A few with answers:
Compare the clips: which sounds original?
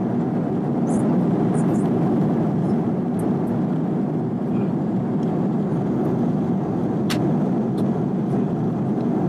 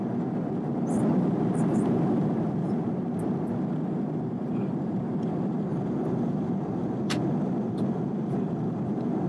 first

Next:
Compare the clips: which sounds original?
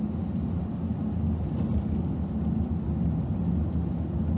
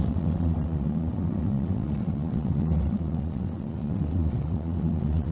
first